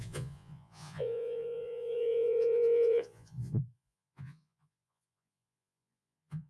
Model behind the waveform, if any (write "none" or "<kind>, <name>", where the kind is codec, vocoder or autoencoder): vocoder, Vocos